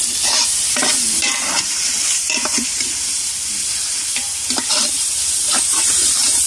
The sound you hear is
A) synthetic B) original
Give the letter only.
A